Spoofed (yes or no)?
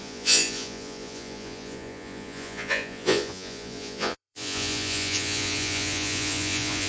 yes